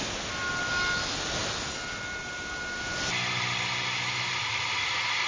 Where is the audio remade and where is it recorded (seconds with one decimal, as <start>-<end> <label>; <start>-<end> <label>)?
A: 0.0-5.3 recorded